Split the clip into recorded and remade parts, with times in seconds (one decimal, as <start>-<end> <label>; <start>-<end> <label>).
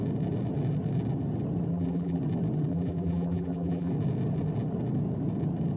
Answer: 0.0-1.7 recorded; 1.7-2.2 remade; 2.2-2.7 recorded; 2.7-3.9 remade; 3.9-5.8 recorded